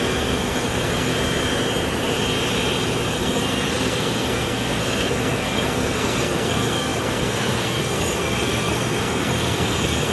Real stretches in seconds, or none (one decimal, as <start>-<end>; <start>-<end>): 1.1-3.1